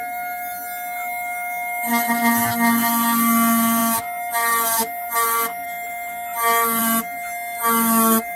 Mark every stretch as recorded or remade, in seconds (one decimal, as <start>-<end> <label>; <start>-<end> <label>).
0.0-8.4 recorded